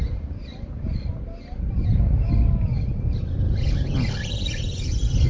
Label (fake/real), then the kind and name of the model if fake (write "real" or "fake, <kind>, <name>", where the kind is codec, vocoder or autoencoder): real